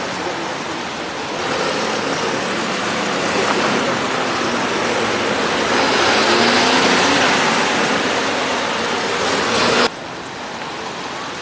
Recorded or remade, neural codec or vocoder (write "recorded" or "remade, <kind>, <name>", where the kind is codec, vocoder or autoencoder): recorded